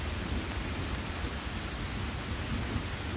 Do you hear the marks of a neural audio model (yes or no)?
no